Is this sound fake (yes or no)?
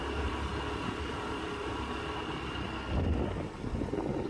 no